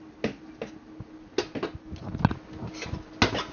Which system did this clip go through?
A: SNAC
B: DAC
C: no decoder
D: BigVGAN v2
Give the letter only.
C